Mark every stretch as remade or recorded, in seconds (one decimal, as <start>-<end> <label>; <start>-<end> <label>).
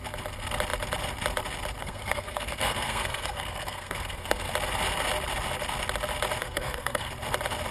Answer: 0.0-1.8 recorded; 1.8-4.5 remade; 4.5-6.4 recorded; 6.4-7.1 remade; 7.1-7.7 recorded